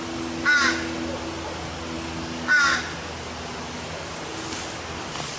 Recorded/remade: recorded